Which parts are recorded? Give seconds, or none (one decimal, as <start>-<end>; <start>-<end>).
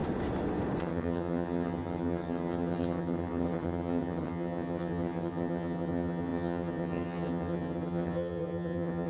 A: 0.0-0.8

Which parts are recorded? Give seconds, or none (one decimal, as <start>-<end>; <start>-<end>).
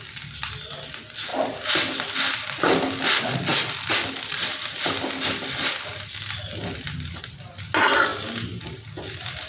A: 0.0-1.3; 2.6-3.5; 5.7-8.1; 8.9-9.5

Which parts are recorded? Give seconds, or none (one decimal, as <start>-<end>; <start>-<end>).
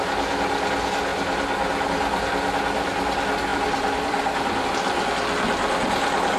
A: 0.0-3.5; 4.6-6.4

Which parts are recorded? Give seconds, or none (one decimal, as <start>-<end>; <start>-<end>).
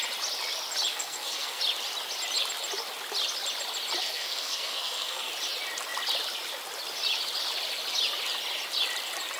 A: 0.0-0.9; 1.6-4.0; 5.3-9.4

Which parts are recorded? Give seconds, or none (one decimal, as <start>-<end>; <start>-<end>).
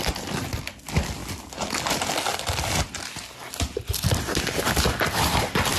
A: 0.0-5.8